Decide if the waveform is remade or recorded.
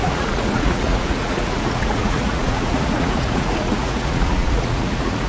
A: remade